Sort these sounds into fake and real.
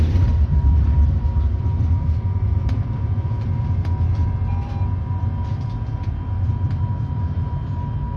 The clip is fake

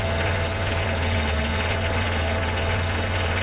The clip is real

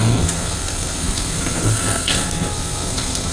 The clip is fake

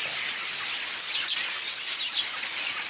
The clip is real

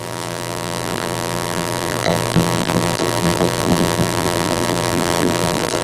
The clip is fake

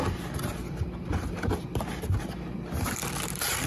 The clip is real